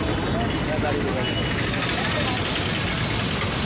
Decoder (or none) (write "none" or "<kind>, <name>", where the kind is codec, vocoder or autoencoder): none